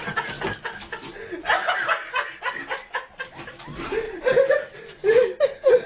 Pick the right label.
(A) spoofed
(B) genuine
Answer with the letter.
B